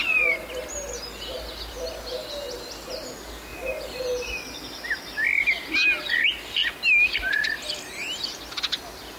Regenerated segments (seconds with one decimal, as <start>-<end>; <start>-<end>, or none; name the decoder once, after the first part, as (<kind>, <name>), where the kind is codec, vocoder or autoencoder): none